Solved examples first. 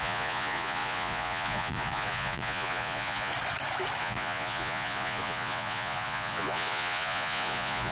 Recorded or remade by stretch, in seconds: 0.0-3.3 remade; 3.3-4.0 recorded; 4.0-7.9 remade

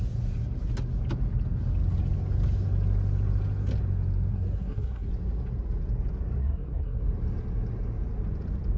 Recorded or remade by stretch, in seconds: 0.0-4.3 recorded; 4.3-5.1 remade; 5.1-6.4 recorded; 6.4-7.0 remade; 7.0-8.8 recorded

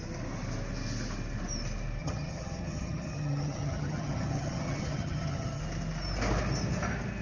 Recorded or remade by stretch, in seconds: 0.0-2.0 recorded; 2.0-5.6 remade; 5.6-7.2 recorded

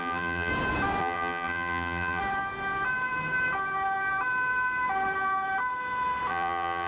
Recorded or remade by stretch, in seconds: 0.0-0.5 remade; 0.5-1.0 recorded; 1.0-2.2 remade; 2.2-6.3 recorded; 6.3-6.9 remade

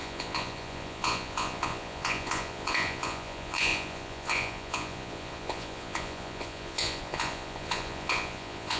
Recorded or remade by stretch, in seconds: 0.0-8.8 remade

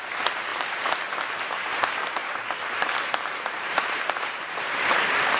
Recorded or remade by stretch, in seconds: 0.0-0.5 recorded; 0.5-1.0 remade; 1.0-2.2 recorded; 2.2-5.4 remade